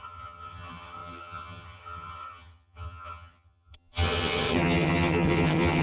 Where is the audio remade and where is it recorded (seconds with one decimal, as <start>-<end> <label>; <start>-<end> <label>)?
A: 0.0-5.8 remade